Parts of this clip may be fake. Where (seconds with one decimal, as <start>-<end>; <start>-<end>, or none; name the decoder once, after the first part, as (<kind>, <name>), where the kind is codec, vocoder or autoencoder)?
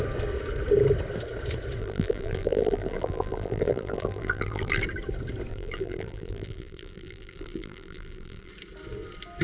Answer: 1.8-4.8 (vocoder, BigVGAN v2); 5.5-8.5